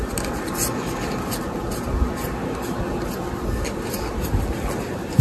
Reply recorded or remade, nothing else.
recorded